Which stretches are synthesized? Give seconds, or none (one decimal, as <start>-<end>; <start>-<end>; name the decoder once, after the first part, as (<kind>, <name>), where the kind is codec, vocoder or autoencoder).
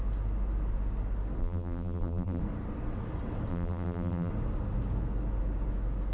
1.4-2.4 (vocoder, BigVGAN v2); 3.5-4.3